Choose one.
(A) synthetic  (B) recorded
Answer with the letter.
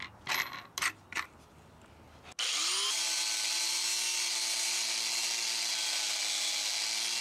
B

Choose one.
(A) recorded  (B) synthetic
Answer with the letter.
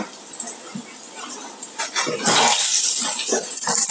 A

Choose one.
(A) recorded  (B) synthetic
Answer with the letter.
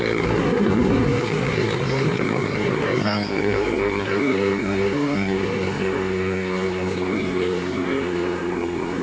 B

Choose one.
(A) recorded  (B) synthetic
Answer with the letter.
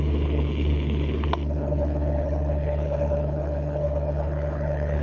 B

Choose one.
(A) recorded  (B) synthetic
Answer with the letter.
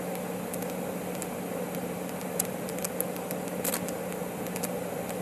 A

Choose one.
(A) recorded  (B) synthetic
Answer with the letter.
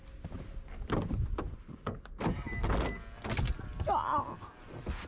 A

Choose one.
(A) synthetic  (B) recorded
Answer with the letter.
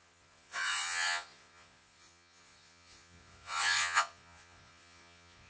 A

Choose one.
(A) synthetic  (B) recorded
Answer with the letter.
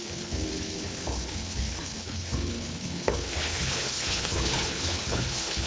A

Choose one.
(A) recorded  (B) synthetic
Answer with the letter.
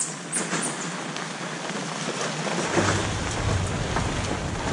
A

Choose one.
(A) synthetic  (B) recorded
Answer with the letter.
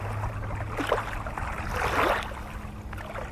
B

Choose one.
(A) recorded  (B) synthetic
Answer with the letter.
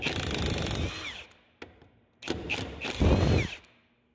A